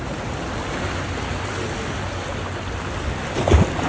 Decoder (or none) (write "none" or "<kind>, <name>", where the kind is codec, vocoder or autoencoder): none